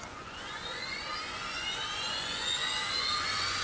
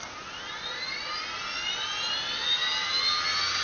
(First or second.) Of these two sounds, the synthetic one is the first